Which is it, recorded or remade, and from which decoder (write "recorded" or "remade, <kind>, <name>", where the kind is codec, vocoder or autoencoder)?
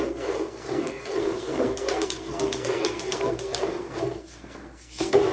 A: remade, codec, SNAC